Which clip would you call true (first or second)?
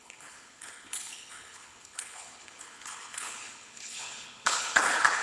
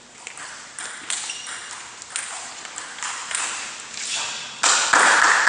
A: second